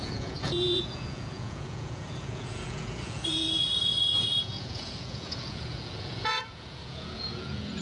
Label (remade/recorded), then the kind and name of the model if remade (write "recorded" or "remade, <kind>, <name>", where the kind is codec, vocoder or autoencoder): remade, vocoder, Vocos